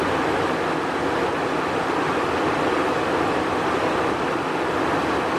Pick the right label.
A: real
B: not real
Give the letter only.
A